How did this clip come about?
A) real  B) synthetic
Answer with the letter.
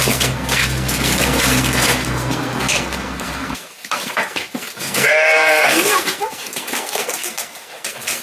B